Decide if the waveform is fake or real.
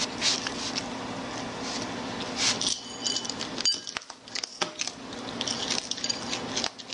real